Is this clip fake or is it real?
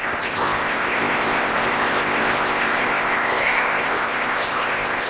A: fake